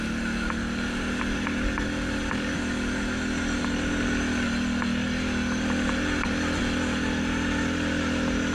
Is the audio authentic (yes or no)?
yes